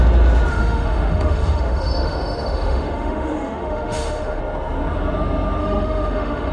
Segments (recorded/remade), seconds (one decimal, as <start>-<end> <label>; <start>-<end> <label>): 0.0-0.5 recorded; 0.5-4.4 remade; 4.4-5.6 recorded; 5.6-6.5 remade